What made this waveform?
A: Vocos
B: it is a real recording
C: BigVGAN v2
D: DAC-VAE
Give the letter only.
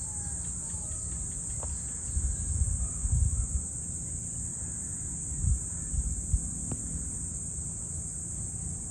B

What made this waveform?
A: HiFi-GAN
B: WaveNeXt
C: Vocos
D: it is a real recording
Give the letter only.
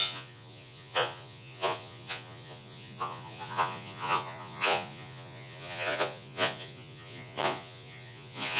C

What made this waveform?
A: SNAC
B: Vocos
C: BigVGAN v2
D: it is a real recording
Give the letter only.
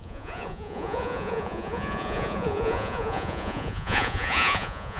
B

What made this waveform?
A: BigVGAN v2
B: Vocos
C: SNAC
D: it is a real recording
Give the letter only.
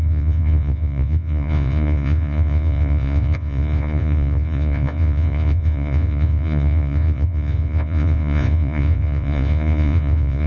B